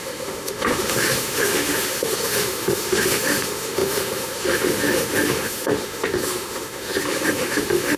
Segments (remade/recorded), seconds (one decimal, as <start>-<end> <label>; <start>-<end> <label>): 0.0-8.0 remade